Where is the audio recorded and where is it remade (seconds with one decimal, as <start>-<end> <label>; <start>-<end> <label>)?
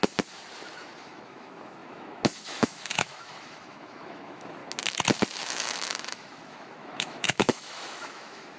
0.0-1.0 recorded; 1.0-4.6 remade; 4.6-5.4 recorded; 5.4-8.6 remade